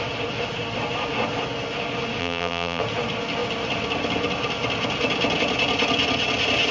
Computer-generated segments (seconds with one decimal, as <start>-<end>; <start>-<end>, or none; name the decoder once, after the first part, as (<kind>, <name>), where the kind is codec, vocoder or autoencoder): 2.2-2.8 (vocoder, BigVGAN v2)